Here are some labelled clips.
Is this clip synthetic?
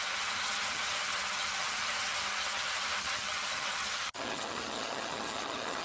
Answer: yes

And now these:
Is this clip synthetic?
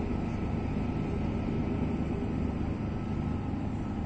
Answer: no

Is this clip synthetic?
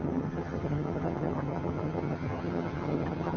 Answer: yes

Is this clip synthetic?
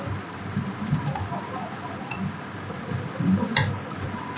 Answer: no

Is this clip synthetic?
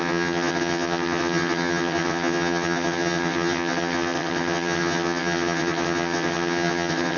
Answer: yes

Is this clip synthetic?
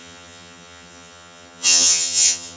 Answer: yes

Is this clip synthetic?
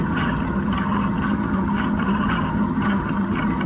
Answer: yes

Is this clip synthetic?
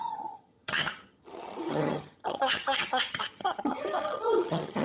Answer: yes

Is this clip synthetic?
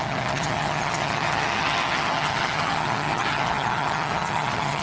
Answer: yes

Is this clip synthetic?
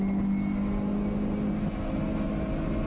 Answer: no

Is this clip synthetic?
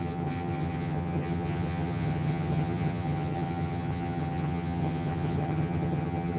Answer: yes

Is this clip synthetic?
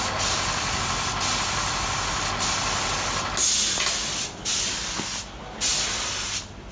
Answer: no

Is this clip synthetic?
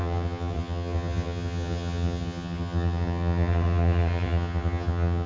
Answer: yes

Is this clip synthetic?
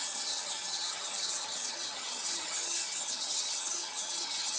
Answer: yes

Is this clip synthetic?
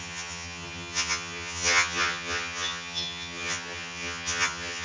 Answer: yes